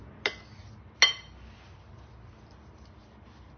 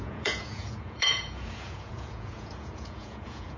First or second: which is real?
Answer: first